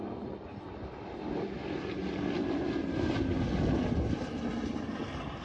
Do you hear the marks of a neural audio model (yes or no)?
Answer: no